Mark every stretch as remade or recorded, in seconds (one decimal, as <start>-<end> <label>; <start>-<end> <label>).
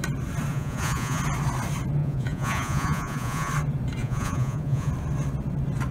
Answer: 0.0-0.5 recorded; 0.5-1.2 remade; 1.2-2.0 recorded; 2.0-3.5 remade; 3.5-4.0 recorded; 4.0-4.9 remade; 4.9-5.9 recorded